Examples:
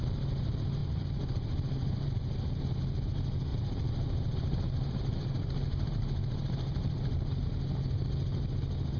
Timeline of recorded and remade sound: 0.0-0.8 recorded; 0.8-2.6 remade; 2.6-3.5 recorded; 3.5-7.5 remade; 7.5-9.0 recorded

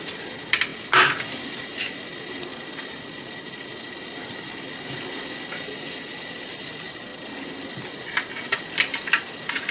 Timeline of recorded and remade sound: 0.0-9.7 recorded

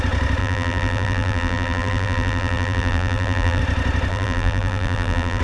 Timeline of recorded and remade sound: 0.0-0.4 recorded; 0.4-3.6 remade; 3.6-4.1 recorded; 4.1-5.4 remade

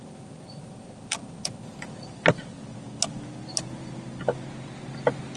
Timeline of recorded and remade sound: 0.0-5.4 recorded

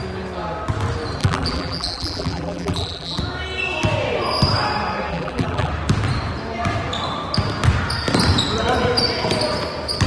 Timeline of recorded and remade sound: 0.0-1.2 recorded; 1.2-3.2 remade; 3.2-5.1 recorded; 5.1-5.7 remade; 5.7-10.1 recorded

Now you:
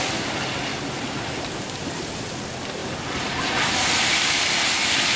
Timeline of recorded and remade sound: 0.0-0.7 recorded; 0.7-2.1 remade; 2.1-5.2 recorded

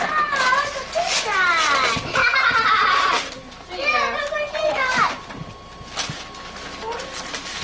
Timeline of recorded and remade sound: 0.0-2.2 recorded; 2.2-3.7 remade; 3.7-4.8 recorded; 4.8-5.4 remade; 5.4-7.6 recorded